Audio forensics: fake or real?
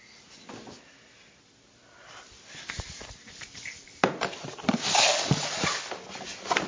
real